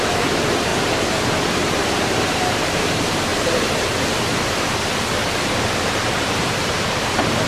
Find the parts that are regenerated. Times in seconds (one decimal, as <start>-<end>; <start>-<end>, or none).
0.0-0.7; 1.6-3.3; 4.1-7.5